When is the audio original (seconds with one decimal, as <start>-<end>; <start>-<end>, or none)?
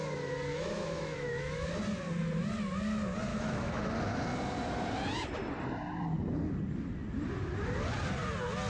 0.0-0.5; 1.8-3.3; 3.9-8.7